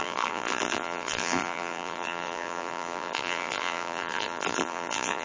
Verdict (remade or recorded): remade